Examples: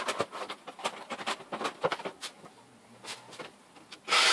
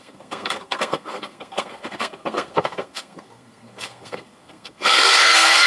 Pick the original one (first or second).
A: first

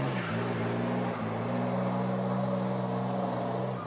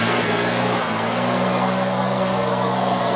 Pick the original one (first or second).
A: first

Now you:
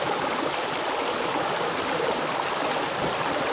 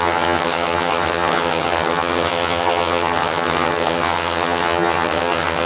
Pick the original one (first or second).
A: first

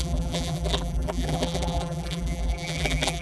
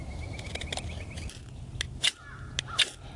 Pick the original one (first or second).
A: second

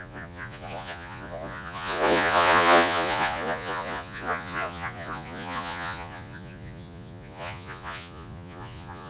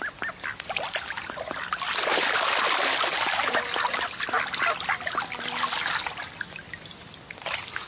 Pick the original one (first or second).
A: second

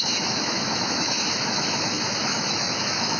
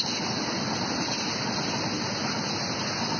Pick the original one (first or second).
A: second